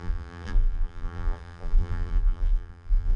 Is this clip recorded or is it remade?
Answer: remade